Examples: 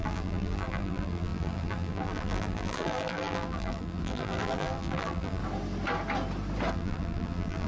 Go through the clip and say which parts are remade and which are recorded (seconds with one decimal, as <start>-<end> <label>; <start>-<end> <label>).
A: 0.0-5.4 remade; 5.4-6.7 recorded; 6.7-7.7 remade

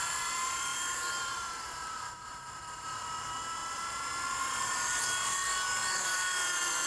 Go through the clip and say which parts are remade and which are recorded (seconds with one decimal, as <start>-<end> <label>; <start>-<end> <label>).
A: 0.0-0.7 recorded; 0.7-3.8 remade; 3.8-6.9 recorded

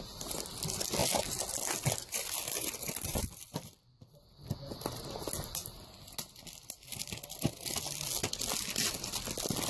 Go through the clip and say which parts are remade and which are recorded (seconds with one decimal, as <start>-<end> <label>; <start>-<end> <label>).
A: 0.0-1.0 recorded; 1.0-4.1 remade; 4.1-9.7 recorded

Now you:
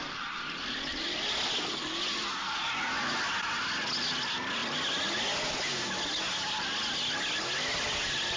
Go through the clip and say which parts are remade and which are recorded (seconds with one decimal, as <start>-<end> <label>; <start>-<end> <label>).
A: 0.0-8.4 recorded